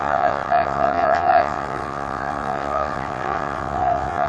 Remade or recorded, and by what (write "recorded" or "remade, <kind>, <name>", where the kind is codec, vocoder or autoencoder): remade, vocoder, WaveNeXt